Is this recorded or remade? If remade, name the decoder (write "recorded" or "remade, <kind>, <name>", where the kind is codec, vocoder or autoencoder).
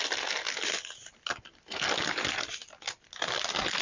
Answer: recorded